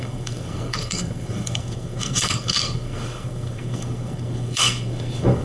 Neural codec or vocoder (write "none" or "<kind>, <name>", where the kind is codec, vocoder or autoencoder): codec, SNAC